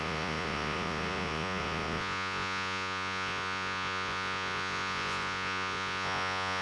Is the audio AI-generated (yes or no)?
yes